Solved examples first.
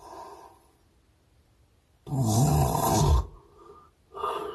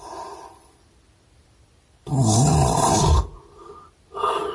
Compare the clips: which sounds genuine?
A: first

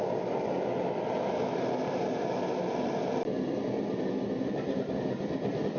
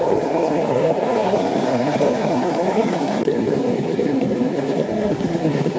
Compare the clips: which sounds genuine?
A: first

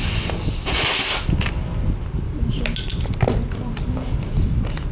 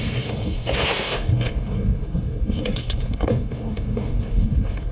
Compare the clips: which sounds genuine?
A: first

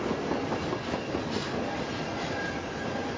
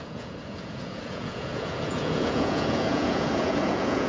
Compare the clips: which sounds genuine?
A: first